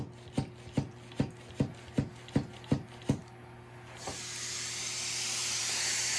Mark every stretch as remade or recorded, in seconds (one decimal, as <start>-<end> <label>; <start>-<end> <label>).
0.0-6.2 recorded